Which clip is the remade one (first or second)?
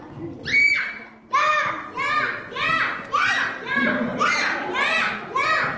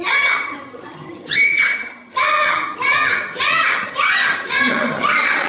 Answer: second